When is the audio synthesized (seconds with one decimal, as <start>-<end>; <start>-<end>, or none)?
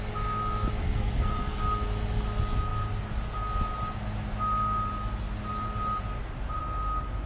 0.8-1.6